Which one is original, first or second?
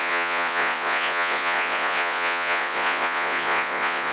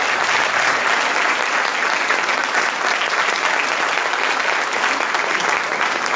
second